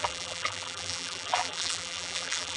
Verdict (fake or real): fake